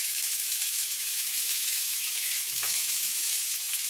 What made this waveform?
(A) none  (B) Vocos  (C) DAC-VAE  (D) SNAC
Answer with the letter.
C